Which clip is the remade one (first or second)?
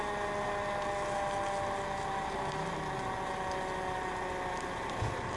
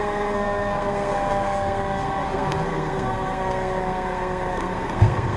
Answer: second